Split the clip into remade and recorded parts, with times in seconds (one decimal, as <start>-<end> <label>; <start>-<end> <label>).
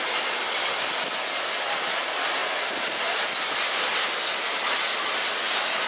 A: 0.0-5.9 recorded